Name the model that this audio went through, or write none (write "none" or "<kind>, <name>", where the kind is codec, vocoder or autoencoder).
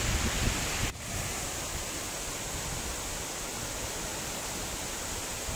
none